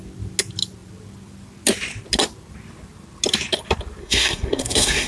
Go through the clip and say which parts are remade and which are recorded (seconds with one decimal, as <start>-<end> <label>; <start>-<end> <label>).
0.0-4.0 recorded; 4.0-5.1 remade